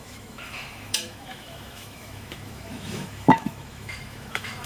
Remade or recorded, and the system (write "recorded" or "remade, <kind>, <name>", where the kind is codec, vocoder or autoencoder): remade, autoencoder, DAC-VAE